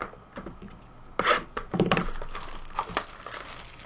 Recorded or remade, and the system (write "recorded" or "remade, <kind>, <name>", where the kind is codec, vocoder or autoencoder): recorded